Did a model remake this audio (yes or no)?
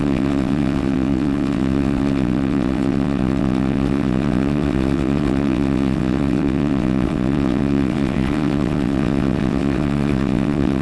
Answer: yes